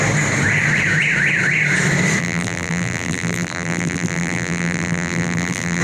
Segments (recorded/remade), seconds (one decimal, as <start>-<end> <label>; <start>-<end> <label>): 0.0-2.2 recorded; 2.2-5.8 remade